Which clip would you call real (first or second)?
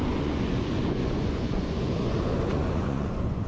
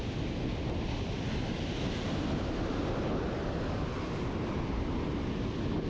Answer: second